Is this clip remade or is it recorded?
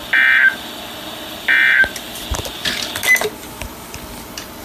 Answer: recorded